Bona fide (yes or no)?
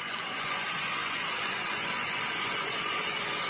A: no